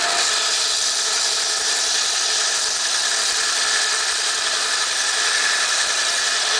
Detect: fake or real real